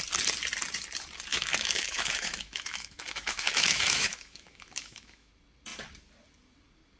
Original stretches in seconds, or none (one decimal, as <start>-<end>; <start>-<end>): 0.0-1.3; 5.3-7.0

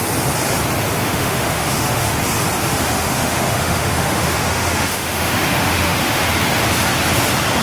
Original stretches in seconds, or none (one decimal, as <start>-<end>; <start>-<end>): 0.0-1.0; 2.2-2.6; 6.2-7.6

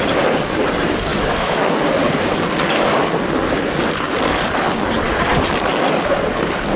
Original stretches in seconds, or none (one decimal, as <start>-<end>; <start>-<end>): 0.0-1.1; 1.6-6.8

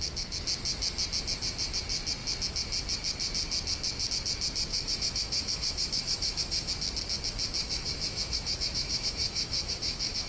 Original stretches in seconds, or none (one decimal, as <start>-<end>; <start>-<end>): 0.0-4.7; 6.7-7.6

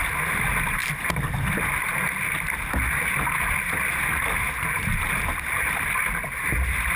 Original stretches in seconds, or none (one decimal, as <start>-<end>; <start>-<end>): 0.0-7.0

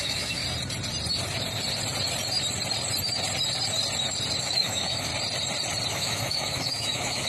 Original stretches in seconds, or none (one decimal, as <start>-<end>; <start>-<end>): 0.4-4.4; 5.1-5.9